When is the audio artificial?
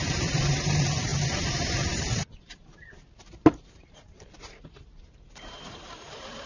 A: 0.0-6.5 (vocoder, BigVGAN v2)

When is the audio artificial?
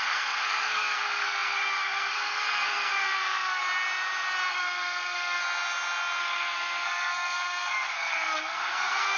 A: 0.0-3.6 (codec, SNAC); 4.5-5.4; 6.2-9.2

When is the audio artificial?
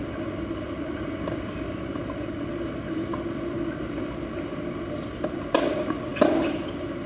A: none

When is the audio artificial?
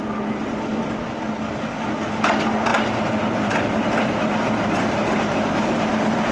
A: 2.7-6.3 (vocoder, BigVGAN v2)